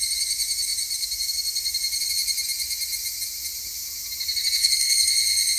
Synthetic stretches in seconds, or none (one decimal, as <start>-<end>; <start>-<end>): 4.6-5.1